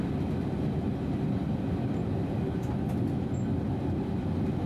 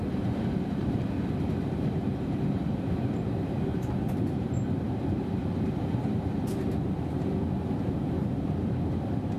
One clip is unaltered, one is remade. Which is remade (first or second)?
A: second